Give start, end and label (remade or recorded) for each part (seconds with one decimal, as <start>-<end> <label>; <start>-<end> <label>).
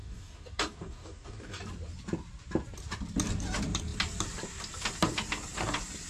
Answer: 0.0-1.6 remade; 1.6-6.1 recorded